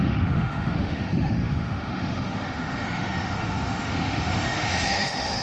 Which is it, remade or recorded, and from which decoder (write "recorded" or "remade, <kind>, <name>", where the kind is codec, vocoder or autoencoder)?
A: remade, autoencoder, DAC-VAE